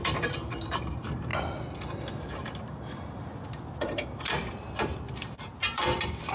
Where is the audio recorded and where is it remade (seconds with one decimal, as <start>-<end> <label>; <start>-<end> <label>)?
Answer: 0.0-1.3 remade; 1.3-2.3 recorded; 2.3-3.3 remade; 3.3-3.8 recorded; 3.8-6.3 remade